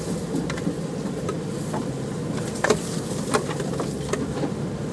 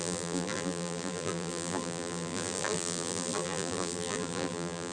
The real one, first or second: first